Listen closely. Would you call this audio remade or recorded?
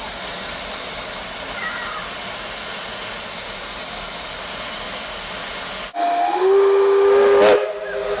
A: recorded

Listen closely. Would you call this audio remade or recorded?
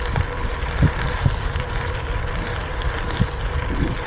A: recorded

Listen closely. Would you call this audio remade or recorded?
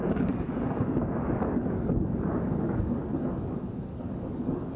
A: remade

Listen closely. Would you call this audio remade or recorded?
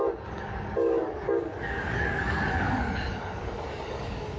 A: remade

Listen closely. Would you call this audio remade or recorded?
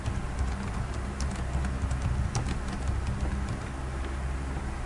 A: recorded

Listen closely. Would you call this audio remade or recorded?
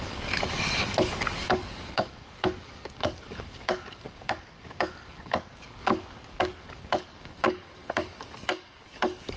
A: remade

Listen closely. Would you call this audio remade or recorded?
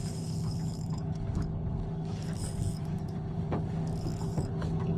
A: remade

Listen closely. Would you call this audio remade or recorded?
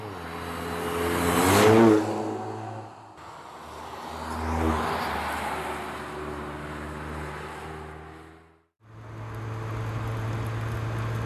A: recorded